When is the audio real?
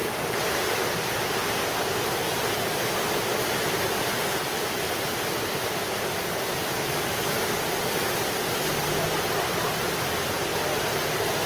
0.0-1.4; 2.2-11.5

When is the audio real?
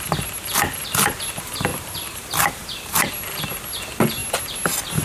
0.0-1.7; 3.1-5.0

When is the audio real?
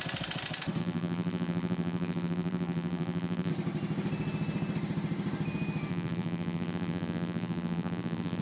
0.0-0.8; 3.5-5.9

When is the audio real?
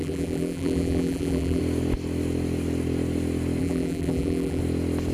1.6-3.6; 4.6-5.1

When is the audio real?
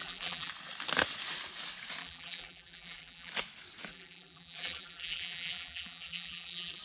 0.5-2.0; 3.3-3.9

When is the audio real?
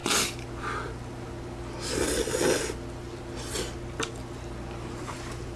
0.0-5.6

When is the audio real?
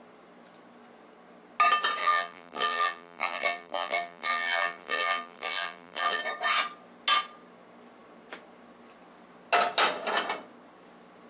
0.0-2.0; 6.2-11.3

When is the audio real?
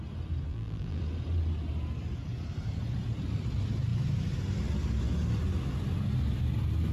0.0-0.5; 1.0-6.9